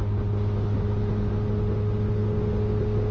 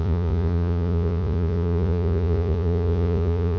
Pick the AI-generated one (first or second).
second